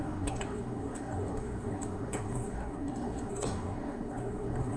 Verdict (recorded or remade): remade